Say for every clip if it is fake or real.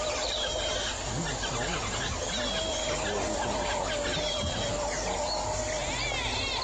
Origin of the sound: real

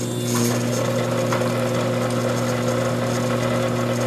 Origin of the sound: real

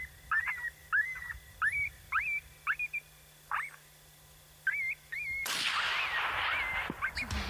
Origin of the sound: real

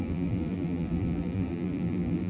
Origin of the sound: fake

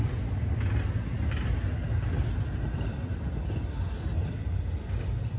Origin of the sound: real